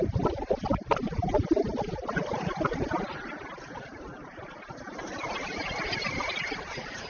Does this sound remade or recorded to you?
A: recorded